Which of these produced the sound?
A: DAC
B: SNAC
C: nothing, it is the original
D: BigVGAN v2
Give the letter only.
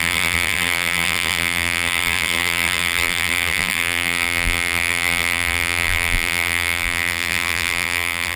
D